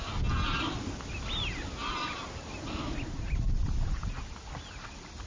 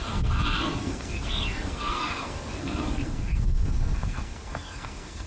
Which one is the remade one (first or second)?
second